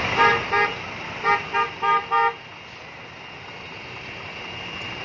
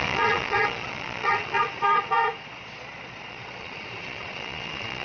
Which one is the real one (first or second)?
first